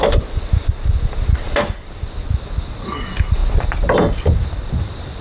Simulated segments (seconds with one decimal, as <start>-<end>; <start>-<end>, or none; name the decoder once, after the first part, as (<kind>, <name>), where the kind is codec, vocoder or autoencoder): none